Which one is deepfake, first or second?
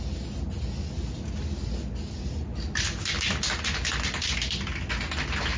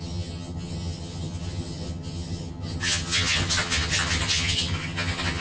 second